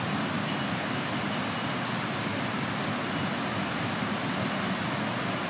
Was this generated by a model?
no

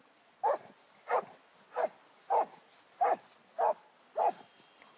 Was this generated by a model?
no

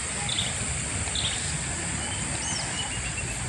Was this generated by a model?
no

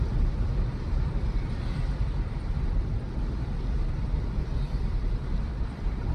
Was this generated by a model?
yes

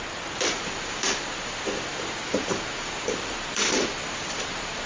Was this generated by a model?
yes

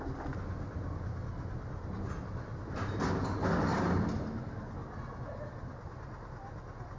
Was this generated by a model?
no